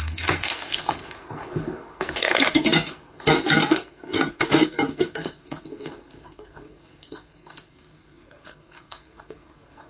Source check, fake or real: fake